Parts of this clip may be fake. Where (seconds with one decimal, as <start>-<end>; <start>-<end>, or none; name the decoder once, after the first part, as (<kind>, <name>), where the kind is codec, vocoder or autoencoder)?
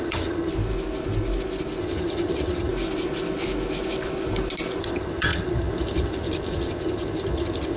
0.0-0.5 (vocoder, HiFi-GAN); 1.8-2.7; 4.8-7.8